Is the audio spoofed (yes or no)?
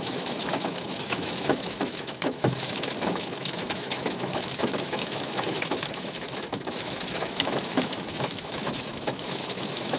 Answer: yes